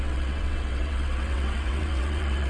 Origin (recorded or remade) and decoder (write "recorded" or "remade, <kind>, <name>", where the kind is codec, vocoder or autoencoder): remade, vocoder, WaveNeXt